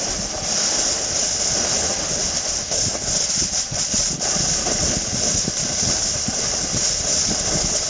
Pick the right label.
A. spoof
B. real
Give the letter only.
B